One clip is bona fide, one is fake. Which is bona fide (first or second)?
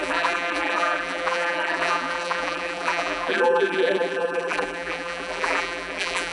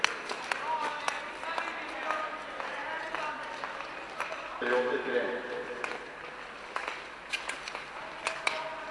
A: second